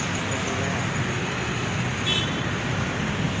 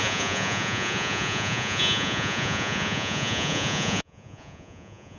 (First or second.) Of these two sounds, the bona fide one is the first